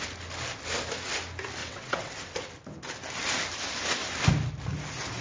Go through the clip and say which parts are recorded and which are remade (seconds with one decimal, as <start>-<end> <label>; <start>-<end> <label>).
0.0-1.6 recorded; 1.6-2.1 remade; 2.1-5.2 recorded